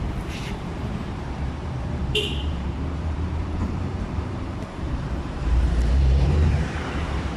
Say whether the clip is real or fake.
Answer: fake